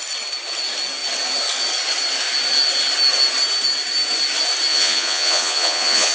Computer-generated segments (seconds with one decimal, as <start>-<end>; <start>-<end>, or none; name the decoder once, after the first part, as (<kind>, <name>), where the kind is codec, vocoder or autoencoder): 4.7-6.1 (vocoder, Vocos)